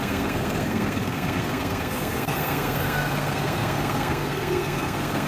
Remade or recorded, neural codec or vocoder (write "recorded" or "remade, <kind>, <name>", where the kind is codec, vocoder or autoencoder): remade, codec, SNAC